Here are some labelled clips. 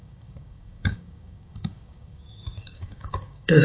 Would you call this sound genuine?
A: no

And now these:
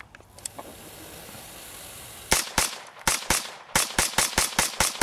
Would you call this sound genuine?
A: yes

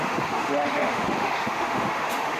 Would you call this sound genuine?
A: no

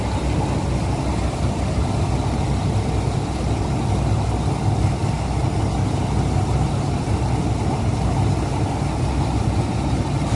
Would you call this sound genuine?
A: yes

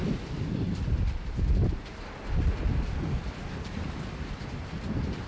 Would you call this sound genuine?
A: yes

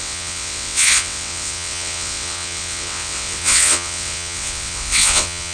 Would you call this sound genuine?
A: no